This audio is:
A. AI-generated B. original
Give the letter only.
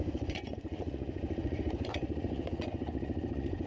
A